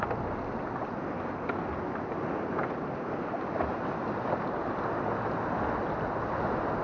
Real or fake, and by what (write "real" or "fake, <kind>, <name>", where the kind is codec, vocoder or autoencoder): real